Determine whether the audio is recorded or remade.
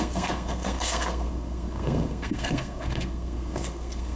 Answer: remade